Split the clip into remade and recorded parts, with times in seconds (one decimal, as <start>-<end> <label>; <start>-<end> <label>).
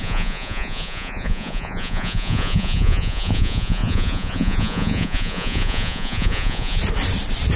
0.0-6.8 remade; 6.8-7.6 recorded